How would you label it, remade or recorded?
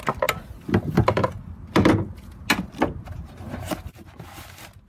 recorded